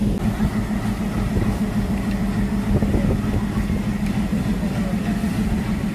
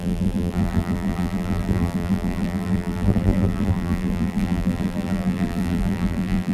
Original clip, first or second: first